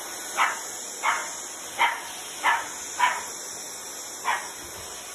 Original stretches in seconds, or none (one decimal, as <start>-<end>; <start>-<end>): 0.0-5.1